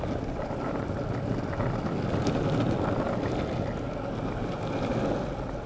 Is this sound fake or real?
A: real